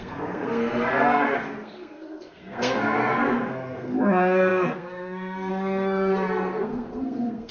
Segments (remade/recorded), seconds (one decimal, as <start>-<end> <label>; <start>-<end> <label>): 0.0-7.5 remade